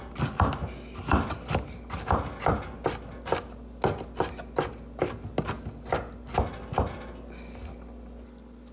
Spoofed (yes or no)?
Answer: no